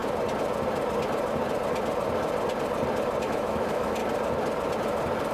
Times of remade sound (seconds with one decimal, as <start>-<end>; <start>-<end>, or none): 3.2-4.0